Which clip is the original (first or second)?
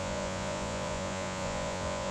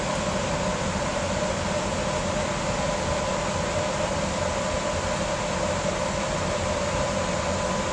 second